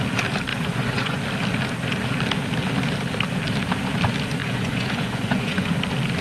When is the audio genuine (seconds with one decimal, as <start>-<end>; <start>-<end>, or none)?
0.0-0.5; 1.2-4.4; 5.8-6.2